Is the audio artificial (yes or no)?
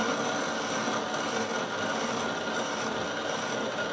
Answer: no